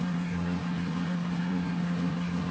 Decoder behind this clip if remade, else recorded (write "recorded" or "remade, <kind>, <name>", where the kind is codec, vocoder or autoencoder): remade, codec, SNAC